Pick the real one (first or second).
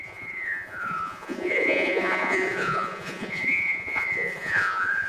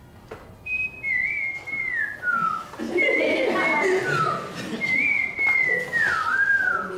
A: second